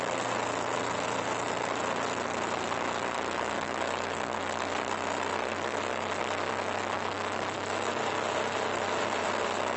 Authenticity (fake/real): real